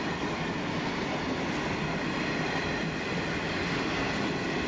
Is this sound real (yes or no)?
yes